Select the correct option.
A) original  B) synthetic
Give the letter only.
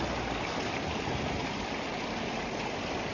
A